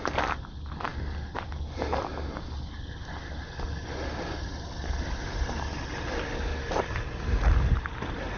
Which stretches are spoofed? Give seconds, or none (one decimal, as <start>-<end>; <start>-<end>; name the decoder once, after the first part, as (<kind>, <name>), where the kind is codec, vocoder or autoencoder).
none